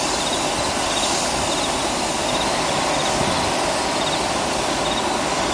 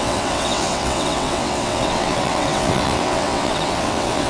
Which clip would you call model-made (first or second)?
second